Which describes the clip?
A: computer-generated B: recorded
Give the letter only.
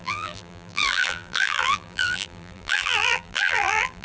A